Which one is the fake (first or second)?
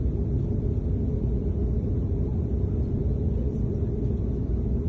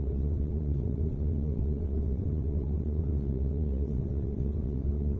second